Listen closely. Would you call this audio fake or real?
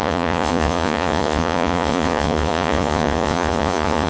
fake